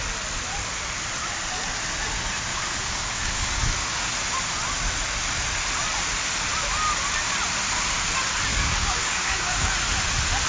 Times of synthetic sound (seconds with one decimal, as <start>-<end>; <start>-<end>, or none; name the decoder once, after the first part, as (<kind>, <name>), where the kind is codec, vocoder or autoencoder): 2.5-4.1 (codec, DAC); 8.5-9.7